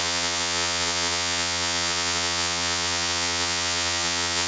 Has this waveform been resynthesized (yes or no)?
yes